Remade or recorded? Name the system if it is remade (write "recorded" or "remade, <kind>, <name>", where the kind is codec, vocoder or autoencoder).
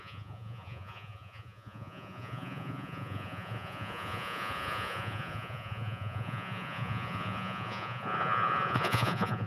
remade, vocoder, Vocos